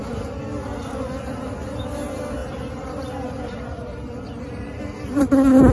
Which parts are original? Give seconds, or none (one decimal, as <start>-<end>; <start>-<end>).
0.0-2.4; 5.3-5.7